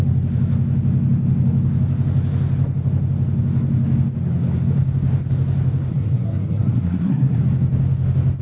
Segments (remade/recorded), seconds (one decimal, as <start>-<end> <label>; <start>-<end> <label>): 0.0-5.9 recorded; 5.9-7.4 remade; 7.4-8.4 recorded